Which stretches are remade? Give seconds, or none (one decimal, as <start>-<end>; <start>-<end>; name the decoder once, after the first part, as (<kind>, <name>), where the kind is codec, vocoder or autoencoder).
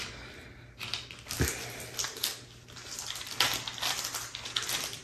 none